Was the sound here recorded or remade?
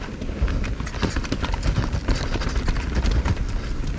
recorded